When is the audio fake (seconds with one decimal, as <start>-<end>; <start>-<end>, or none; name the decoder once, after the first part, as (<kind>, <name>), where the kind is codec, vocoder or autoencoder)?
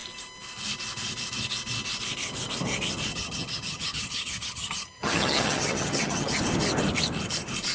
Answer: 3.1-6.4 (vocoder, HiFi-GAN)